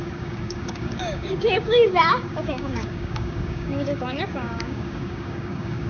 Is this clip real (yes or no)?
no